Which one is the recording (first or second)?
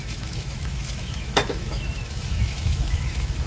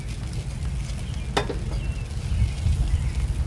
second